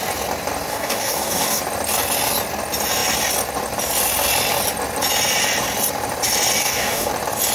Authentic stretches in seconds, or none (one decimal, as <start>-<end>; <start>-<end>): 0.0-0.7; 1.6-6.6; 7.1-7.5